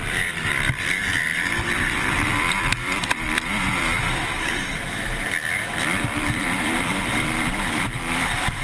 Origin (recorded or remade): remade